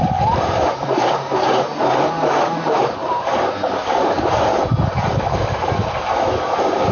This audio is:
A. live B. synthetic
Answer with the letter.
B